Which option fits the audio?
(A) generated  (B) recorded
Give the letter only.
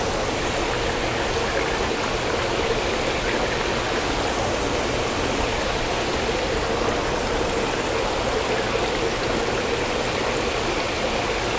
B